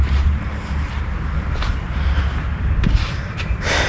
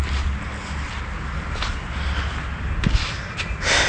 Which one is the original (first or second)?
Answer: second